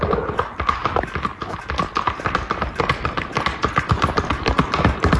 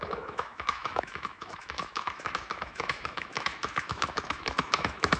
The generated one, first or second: second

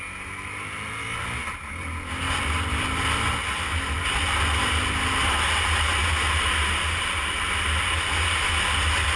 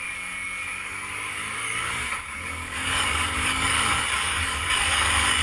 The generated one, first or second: second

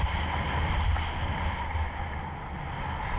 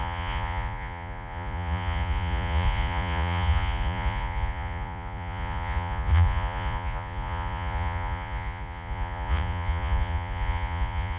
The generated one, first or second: second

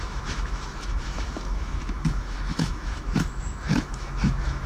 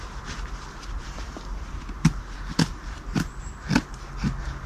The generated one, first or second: first